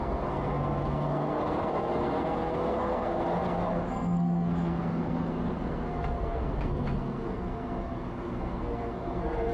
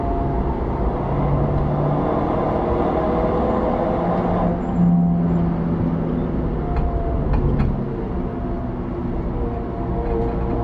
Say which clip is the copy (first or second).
first